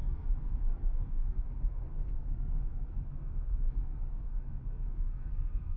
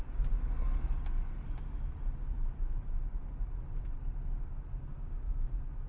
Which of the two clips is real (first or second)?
second